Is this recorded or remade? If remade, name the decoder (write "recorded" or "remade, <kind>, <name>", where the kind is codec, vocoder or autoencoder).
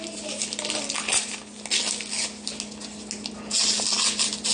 recorded